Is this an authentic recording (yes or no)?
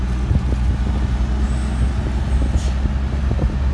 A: yes